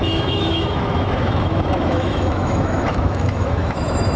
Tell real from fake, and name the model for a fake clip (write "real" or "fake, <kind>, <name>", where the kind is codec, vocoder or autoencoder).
fake, autoencoder, DAC-VAE